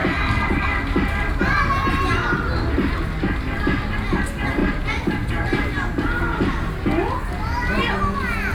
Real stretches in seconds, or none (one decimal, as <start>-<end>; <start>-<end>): 0.0-8.5